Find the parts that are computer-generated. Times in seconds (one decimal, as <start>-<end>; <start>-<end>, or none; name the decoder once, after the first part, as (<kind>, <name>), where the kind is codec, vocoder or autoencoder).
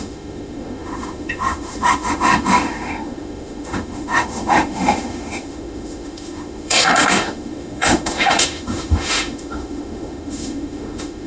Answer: 0.0-11.3 (autoencoder, DAC-VAE)